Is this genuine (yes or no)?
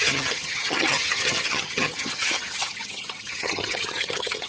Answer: no